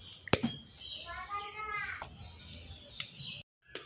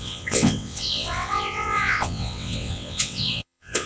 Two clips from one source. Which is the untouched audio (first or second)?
first